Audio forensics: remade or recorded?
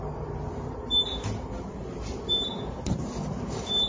recorded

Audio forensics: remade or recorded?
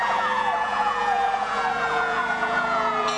remade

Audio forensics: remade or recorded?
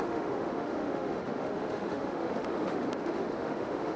remade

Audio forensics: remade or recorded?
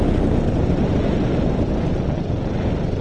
recorded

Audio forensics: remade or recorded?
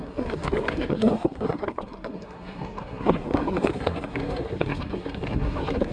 remade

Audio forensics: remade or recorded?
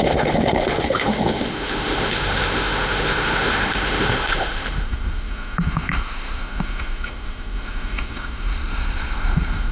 remade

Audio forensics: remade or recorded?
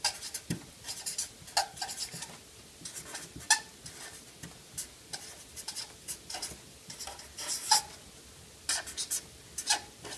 recorded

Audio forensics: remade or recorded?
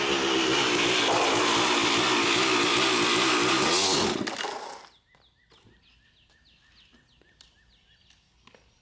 recorded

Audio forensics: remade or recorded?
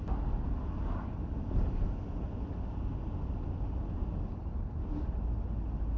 recorded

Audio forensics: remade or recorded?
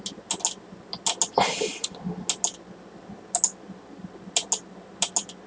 recorded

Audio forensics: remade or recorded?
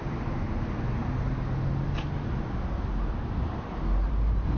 recorded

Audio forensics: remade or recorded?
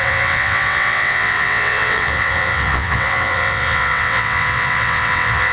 remade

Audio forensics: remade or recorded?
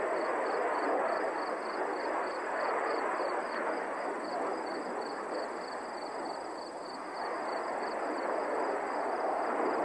recorded